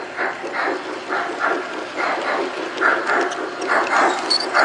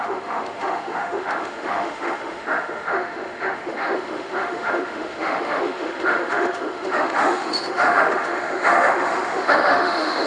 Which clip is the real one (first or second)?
first